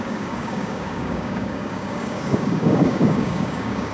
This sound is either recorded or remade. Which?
remade